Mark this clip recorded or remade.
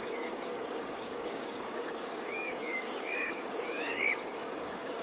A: remade